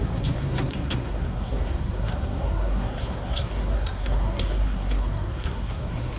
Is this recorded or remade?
remade